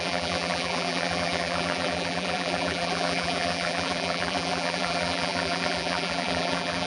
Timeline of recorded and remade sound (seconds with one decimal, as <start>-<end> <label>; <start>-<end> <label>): 0.0-6.9 remade